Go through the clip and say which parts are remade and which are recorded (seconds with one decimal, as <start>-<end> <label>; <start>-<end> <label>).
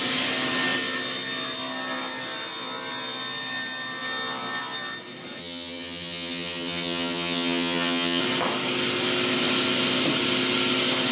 0.0-5.4 recorded; 5.4-8.2 remade; 8.2-11.1 recorded